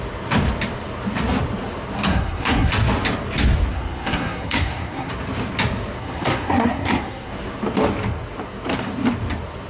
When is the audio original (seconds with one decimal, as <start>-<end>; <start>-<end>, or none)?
0.0-2.1; 2.7-3.7; 5.1-6.0; 7.3-9.7